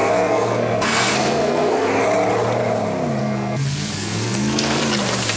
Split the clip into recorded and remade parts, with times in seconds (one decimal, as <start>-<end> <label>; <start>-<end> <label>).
0.0-2.0 remade; 2.0-3.2 recorded; 3.2-4.8 remade; 4.8-5.4 recorded